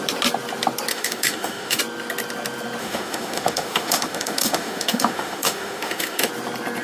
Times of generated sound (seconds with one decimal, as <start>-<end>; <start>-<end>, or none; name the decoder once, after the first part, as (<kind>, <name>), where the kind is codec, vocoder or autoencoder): 0.9-1.8 (autoencoder, DAC-VAE); 2.8-6.3